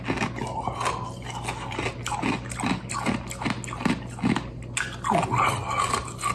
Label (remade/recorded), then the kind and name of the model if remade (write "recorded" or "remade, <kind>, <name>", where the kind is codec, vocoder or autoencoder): recorded